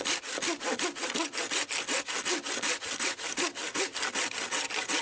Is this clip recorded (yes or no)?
yes